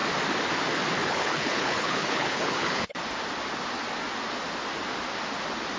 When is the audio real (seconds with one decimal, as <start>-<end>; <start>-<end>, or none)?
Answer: 0.0-1.0; 3.0-5.8